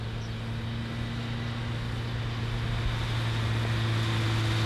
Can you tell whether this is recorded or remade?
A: recorded